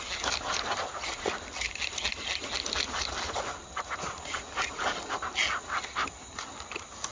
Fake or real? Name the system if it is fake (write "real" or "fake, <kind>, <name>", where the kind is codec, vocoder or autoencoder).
real